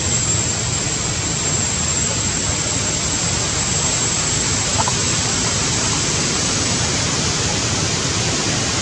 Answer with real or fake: real